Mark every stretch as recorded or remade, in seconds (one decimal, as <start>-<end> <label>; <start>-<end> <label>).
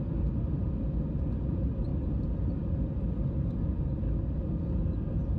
0.0-5.4 recorded